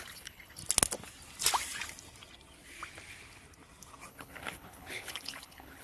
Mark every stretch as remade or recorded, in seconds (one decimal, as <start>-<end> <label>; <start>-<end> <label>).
0.0-0.6 remade; 0.6-4.1 recorded; 4.1-5.8 remade